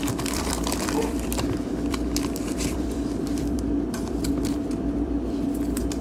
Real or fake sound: fake